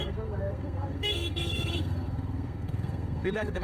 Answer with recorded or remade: remade